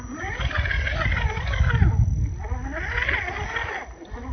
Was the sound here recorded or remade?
recorded